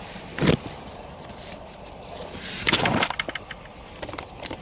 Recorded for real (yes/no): yes